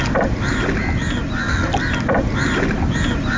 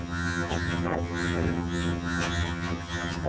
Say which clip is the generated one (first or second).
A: second